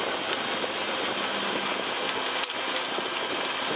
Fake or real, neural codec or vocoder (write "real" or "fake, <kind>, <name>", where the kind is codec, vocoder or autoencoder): real